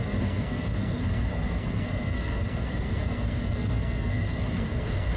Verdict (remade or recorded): remade